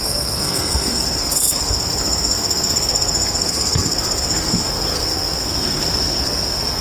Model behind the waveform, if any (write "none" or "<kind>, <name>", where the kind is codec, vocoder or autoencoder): codec, SNAC